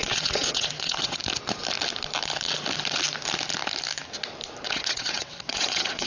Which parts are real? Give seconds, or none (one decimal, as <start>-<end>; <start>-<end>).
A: 1.2-4.6

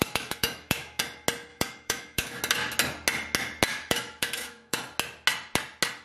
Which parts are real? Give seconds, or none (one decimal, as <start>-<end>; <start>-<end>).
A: 1.0-1.5; 2.4-3.7; 4.8-6.0

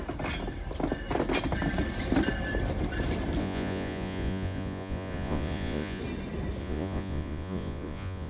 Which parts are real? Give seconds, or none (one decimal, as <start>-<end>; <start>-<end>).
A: 0.0-3.4; 6.0-6.6

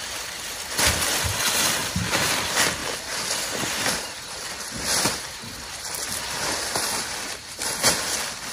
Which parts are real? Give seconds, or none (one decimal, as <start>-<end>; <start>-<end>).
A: 0.0-8.5